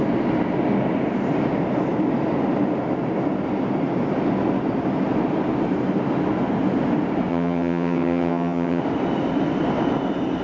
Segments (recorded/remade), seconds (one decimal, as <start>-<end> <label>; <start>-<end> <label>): 0.0-7.3 recorded; 7.3-8.8 remade; 8.8-10.4 recorded